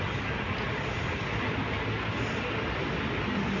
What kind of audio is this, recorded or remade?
recorded